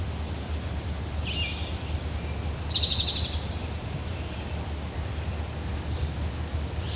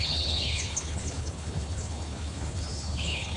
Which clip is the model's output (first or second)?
second